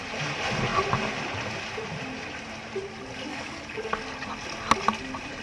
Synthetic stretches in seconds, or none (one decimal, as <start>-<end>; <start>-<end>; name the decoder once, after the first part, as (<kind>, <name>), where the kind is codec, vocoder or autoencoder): 3.3-4.0 (codec, DAC)